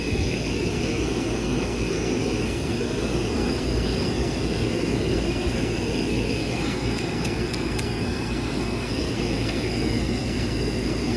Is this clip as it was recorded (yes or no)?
no